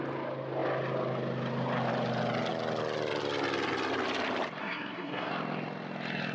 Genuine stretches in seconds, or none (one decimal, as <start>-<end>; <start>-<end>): 0.0-4.6; 5.3-6.3